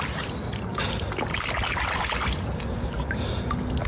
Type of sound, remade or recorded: recorded